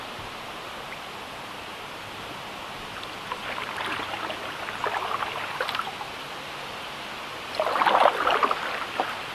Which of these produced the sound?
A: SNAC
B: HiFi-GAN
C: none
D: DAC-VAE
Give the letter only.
C